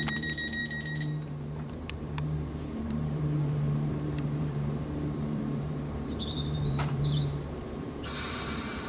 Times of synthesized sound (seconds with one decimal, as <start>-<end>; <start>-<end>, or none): 0.0-8.9